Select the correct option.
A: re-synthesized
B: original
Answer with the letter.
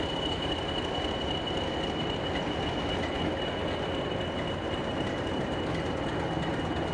B